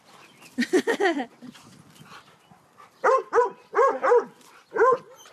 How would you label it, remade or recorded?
recorded